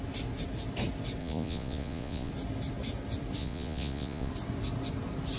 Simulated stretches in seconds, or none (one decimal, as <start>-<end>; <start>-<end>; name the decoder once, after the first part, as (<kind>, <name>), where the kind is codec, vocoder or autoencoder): 1.2-2.3 (vocoder, Vocos); 3.4-4.3